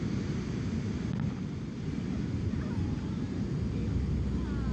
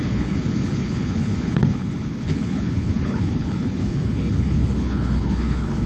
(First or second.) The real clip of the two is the first